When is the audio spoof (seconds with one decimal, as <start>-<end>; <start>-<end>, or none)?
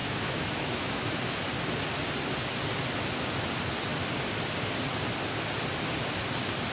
0.0-1.0